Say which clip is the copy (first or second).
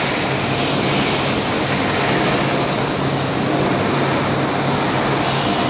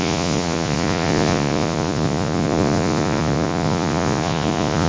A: second